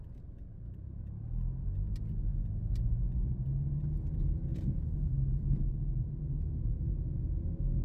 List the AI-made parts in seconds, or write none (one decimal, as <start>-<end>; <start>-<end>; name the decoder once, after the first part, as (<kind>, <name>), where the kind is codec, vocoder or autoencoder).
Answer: 0.5-1.0 (vocoder, BigVGAN v2); 4.5-5.4